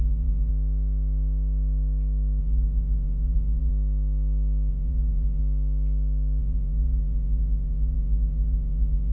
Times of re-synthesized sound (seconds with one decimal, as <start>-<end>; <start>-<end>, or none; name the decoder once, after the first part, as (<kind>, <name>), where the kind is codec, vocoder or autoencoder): 0.0-0.5 (vocoder, Vocos); 2.4-3.7; 4.7-5.4; 6.4-9.1